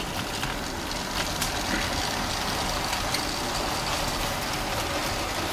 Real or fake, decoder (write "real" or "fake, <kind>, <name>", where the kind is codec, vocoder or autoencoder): real